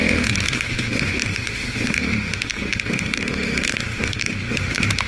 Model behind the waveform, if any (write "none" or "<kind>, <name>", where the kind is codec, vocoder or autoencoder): autoencoder, DAC-VAE